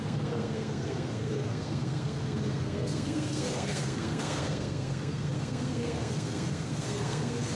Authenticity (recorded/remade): remade